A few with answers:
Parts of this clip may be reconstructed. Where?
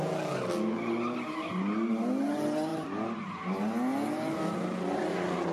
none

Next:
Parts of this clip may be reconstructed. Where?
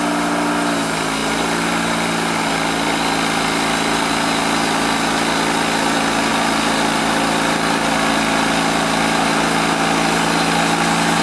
6.3-7.0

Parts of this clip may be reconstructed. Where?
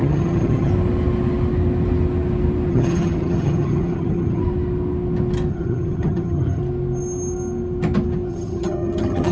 0.0-0.7; 2.7-4.4; 5.5-6.6; 8.3-9.3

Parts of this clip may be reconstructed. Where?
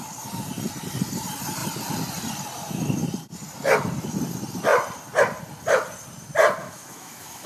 6.6-7.5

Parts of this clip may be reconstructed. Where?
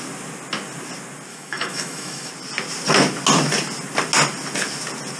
1.3-2.3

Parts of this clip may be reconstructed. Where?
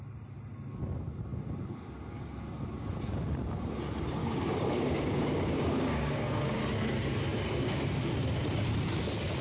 4.2-6.6